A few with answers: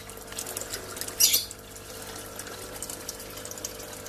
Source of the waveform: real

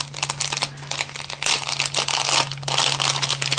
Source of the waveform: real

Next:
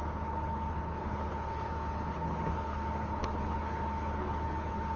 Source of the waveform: fake